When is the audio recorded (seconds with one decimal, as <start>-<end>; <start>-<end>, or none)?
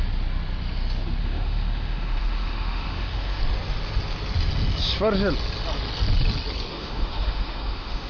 0.0-1.2; 3.4-6.7